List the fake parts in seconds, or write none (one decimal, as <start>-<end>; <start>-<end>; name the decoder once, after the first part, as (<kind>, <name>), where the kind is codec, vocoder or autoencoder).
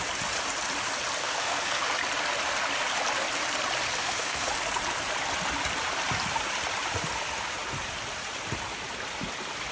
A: 1.2-1.8 (codec, SNAC); 4.0-4.5